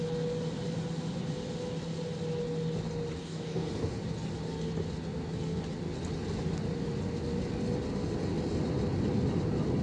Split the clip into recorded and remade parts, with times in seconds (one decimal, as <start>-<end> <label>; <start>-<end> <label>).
0.0-3.2 recorded; 3.2-3.7 remade; 3.7-9.8 recorded